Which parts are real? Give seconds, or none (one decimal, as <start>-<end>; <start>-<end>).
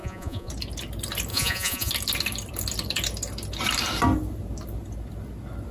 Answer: 0.5-1.3; 1.9-5.7